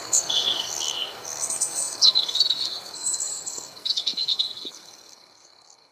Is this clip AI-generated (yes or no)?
yes